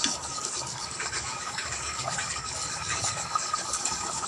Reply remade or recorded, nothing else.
remade